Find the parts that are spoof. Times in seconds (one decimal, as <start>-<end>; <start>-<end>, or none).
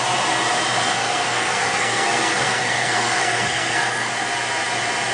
1.0-4.1